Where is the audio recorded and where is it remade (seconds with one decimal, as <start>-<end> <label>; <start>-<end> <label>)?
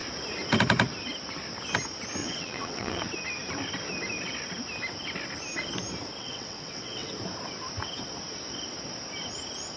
0.0-2.2 recorded; 2.2-3.0 remade; 3.0-6.2 recorded; 6.2-7.1 remade; 7.1-9.8 recorded